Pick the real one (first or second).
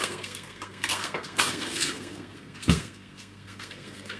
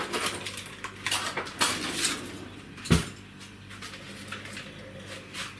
second